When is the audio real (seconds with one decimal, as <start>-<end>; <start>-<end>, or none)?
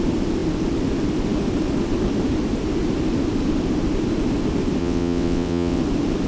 0.0-4.8; 5.8-6.3